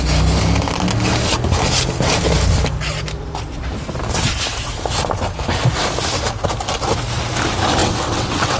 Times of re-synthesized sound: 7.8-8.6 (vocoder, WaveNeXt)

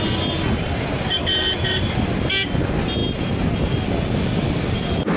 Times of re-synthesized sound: none

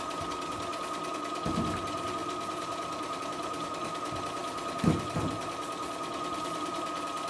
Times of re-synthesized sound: none

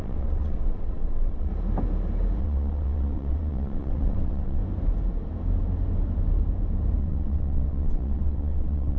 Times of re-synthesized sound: 0.0-1.5 (vocoder, WaveNeXt); 2.4-4.6; 7.0-9.0

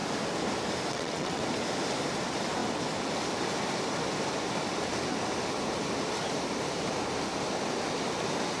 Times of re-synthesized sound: 0.9-1.4 (vocoder, WaveNeXt)